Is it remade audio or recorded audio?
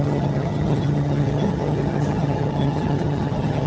remade